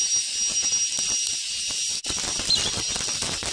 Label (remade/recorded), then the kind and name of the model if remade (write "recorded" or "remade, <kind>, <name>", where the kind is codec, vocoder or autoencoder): recorded